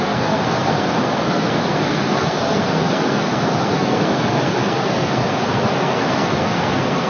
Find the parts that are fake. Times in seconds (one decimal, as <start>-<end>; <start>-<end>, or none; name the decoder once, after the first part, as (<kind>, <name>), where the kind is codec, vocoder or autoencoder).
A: 0.0-7.1 (codec, SNAC)